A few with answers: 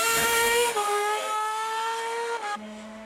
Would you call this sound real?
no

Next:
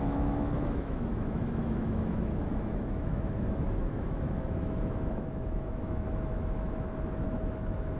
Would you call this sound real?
no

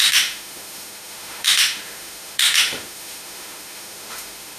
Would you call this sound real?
no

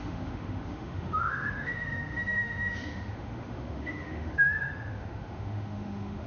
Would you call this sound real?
no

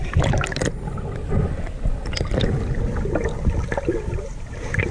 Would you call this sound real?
yes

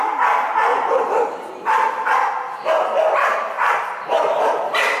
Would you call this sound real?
yes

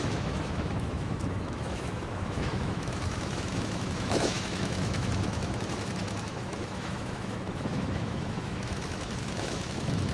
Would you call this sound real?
no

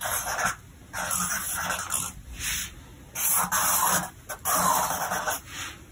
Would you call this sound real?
yes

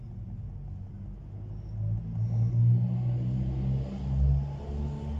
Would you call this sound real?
yes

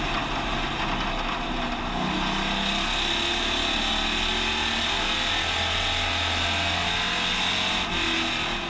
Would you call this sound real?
yes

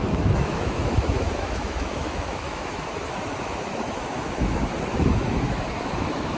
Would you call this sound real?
no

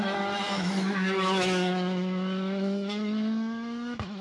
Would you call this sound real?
no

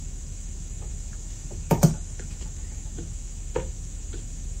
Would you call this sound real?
no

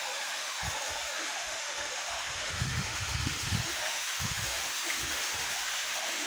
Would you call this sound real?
no